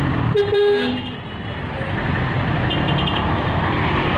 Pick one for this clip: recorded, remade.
recorded